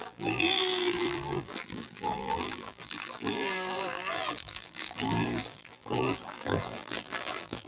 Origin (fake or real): fake